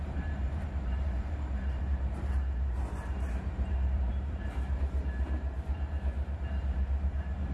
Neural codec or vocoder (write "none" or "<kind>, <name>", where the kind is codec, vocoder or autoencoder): vocoder, BigVGAN v2